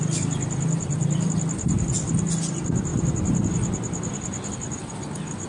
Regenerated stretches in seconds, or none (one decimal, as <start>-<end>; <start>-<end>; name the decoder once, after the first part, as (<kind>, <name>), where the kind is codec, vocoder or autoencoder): none